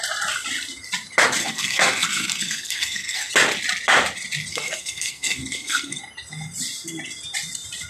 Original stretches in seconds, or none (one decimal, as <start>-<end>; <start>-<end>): 0.0-1.4; 3.3-4.5; 6.0-7.9